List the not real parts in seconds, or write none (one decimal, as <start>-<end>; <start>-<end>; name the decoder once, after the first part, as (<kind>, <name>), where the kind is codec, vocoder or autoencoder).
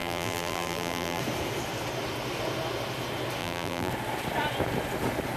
0.0-1.2 (vocoder, BigVGAN v2); 3.4-3.9